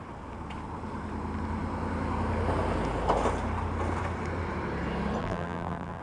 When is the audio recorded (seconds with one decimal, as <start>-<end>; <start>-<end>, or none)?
0.0-5.2